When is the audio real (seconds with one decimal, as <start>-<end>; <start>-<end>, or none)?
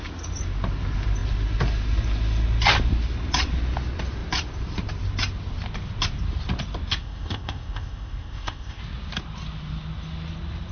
0.0-7.0; 8.8-10.7